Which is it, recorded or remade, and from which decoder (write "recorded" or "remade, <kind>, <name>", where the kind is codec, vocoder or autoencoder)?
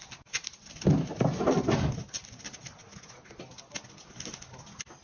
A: recorded